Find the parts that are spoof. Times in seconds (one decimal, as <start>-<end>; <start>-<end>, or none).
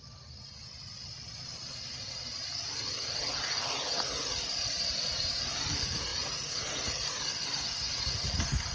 none